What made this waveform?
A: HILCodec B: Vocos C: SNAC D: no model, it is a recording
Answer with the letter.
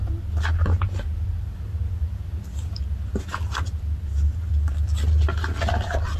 D